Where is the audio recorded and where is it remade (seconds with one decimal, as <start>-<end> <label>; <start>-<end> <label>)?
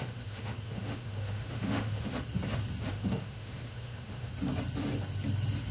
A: 0.0-2.1 remade; 2.1-2.9 recorded; 2.9-4.3 remade; 4.3-5.7 recorded